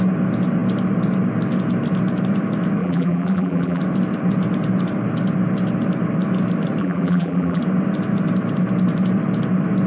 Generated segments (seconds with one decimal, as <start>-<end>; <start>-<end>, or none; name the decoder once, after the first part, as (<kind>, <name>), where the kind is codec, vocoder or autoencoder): 2.8-3.8 (vocoder, BigVGAN v2); 6.8-7.6